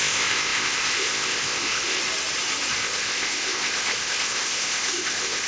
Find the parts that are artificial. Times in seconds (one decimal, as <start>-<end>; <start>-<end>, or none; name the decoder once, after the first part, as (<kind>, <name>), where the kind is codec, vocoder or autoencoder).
0.0-2.0 (codec, ZipCodec); 2.8-5.5